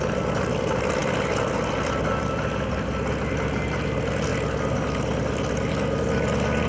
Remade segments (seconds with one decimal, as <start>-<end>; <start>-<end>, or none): none